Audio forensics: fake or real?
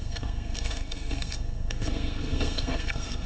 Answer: fake